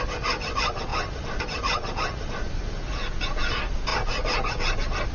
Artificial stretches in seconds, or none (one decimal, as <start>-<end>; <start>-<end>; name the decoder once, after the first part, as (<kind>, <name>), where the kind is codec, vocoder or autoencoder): 0.9-2.8 (vocoder, BigVGAN v2)